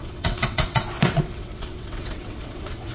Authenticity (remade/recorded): remade